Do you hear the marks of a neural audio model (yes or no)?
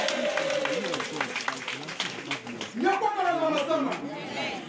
no